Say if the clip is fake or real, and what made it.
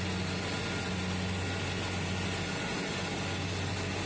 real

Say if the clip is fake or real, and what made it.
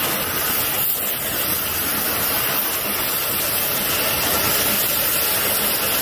real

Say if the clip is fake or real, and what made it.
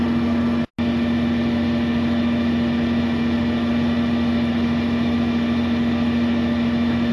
real